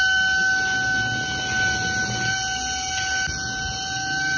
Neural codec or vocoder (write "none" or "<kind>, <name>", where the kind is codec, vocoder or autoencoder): none